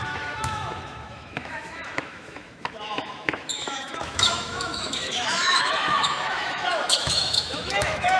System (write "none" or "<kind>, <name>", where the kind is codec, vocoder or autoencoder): autoencoder, DAC-VAE